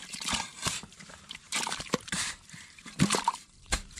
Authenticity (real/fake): fake